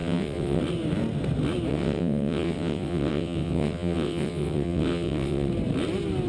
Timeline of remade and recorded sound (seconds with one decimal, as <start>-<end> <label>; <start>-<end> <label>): 0.0-0.6 remade; 0.6-1.7 recorded; 1.7-5.5 remade; 5.5-6.3 recorded